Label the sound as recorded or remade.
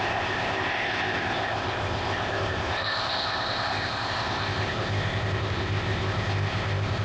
remade